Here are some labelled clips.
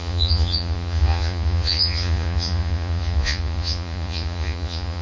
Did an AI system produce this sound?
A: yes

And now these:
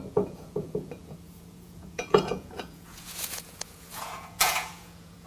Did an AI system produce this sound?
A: yes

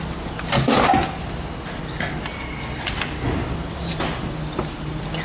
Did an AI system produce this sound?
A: no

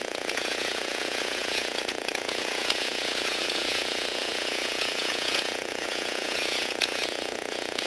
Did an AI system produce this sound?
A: yes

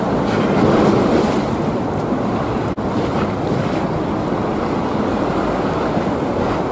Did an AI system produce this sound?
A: no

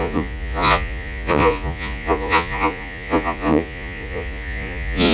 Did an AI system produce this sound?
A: yes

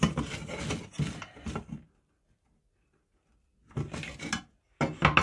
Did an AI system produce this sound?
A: no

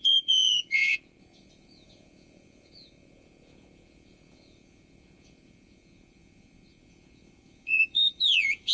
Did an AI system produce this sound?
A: yes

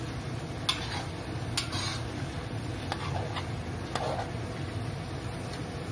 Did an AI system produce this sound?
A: no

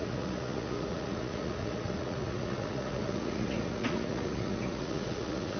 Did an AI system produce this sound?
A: yes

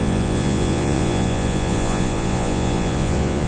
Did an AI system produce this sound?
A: yes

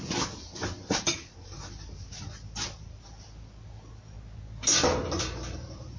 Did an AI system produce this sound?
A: no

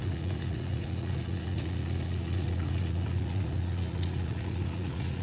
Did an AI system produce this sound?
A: yes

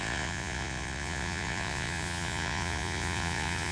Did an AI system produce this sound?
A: yes